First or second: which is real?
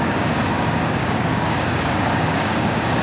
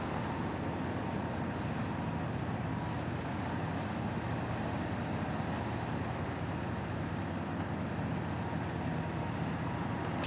second